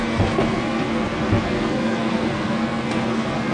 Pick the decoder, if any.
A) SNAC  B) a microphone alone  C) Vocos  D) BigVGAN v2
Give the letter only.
A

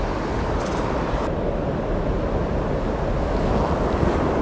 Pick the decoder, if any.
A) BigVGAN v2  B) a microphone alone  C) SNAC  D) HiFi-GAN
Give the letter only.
B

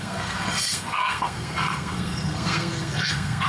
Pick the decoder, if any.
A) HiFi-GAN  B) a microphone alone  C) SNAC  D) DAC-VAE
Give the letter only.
C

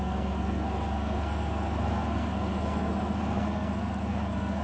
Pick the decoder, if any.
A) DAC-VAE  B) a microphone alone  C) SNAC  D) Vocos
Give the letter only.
C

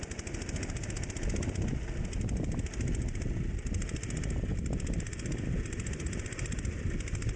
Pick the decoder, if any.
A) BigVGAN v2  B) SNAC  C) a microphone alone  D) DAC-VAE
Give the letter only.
C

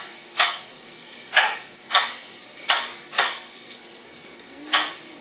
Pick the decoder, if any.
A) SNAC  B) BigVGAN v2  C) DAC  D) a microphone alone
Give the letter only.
A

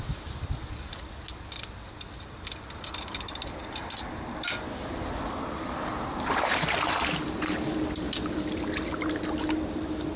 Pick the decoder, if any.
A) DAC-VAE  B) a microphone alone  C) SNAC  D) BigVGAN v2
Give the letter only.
B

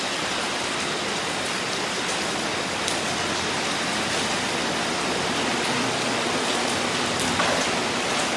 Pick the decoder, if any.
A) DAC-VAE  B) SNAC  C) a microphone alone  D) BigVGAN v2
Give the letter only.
C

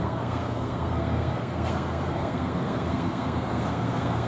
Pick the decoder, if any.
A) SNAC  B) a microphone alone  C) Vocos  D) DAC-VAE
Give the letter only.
A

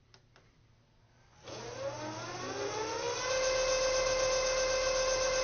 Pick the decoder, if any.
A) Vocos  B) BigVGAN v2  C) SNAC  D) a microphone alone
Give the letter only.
D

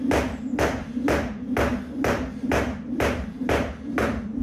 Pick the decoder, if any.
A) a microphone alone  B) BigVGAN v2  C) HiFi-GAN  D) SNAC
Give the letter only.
A